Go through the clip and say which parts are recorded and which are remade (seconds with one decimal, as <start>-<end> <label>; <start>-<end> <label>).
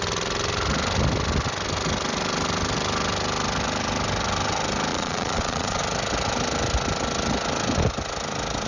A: 0.0-4.9 recorded; 4.9-5.8 remade; 5.8-8.7 recorded